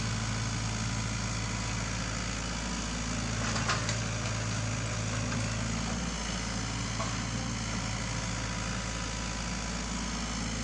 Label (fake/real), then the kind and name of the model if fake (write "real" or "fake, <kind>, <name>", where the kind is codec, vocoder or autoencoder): real